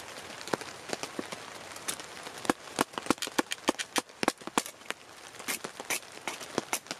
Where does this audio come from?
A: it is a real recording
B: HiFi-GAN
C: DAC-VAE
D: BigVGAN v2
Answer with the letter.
A